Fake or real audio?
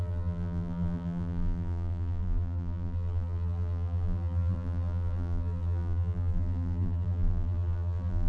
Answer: fake